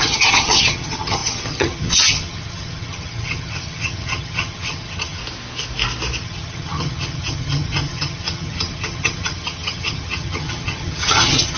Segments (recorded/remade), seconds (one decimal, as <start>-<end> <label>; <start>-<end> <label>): 0.0-5.2 remade; 5.2-6.2 recorded; 6.2-11.6 remade